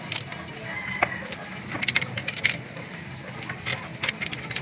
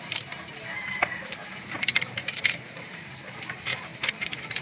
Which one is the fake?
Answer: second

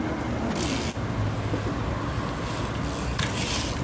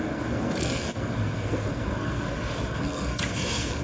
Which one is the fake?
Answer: second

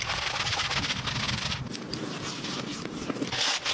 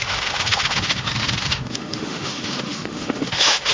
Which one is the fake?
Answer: second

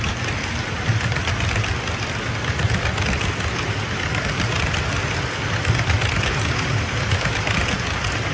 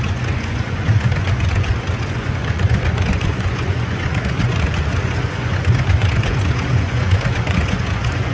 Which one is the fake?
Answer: second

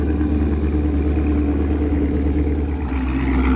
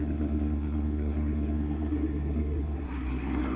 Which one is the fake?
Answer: second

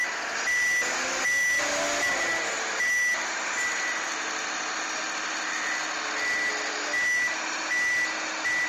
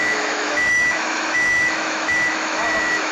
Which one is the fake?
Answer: second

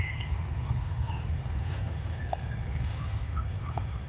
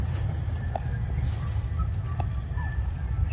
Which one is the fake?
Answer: first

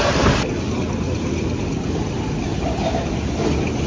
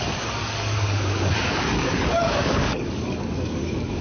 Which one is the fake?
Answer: second